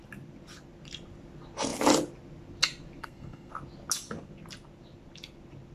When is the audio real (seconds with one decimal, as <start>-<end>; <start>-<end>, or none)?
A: 0.0-3.0; 3.5-5.7